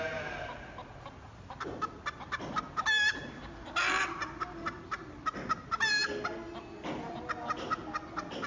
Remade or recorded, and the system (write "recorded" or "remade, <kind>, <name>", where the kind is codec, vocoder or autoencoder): recorded